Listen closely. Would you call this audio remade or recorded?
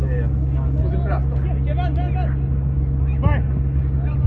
recorded